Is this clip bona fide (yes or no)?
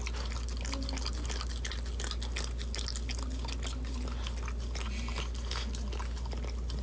yes